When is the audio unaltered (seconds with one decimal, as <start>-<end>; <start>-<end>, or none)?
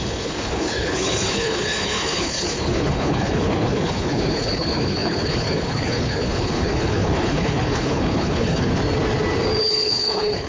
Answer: 8.7-9.6